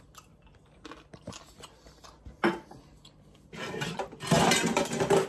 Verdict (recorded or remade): recorded